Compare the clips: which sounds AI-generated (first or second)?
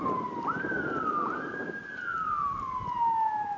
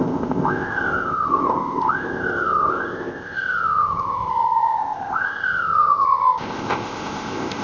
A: second